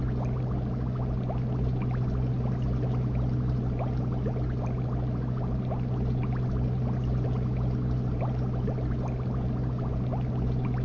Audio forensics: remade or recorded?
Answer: recorded